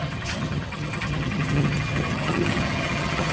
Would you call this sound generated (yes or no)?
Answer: yes